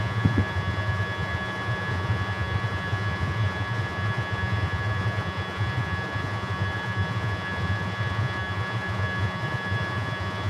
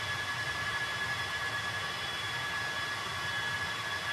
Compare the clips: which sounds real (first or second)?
second